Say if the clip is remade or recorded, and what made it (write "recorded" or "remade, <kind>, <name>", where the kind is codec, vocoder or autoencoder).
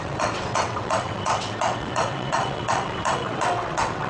remade, vocoder, WaveNeXt